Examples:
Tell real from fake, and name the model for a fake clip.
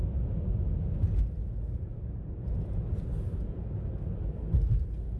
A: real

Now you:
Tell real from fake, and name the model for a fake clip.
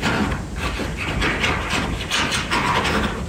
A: real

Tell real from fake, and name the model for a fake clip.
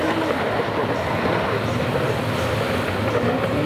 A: real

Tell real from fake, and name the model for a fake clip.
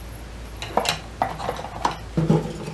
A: real